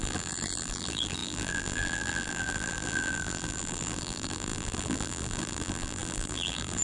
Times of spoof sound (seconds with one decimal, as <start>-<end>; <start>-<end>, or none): 0.0-6.8